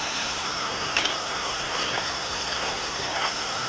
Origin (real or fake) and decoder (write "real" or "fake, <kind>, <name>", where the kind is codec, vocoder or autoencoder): fake, codec, SNAC